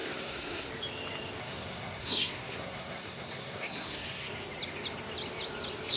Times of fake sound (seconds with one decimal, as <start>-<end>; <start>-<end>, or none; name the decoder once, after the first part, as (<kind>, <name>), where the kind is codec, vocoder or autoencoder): 0.0-0.7 (codec, SNAC); 1.4-4.3